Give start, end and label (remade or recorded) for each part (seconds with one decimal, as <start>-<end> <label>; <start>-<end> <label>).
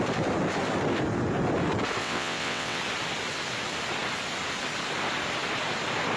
0.0-2.0 recorded; 2.0-2.8 remade; 2.8-6.2 recorded